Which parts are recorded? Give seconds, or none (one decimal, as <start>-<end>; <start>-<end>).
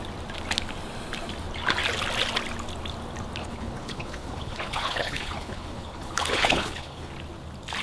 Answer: 0.0-3.4; 7.1-7.8